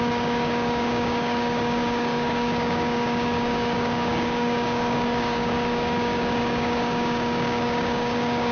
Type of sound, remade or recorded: remade